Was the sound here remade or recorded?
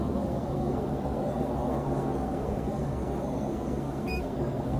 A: remade